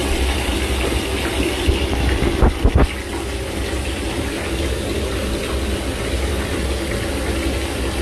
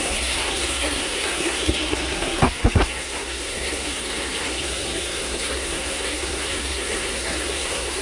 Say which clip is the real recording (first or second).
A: first